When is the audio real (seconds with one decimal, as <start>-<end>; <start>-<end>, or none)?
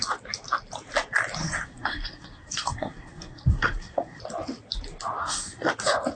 0.0-1.4; 4.2-5.2; 5.7-6.2